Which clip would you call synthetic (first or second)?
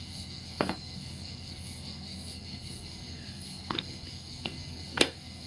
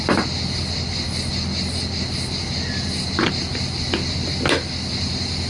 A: first